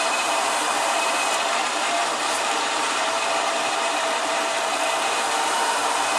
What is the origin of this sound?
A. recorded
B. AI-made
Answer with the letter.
B